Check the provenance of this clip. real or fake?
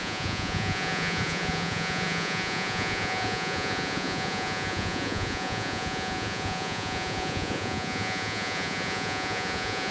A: fake